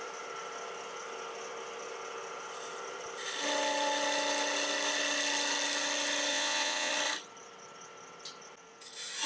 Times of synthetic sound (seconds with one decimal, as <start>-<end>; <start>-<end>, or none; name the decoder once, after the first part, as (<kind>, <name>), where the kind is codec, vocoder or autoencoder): 6.3-6.9 (vocoder, WaveNeXt)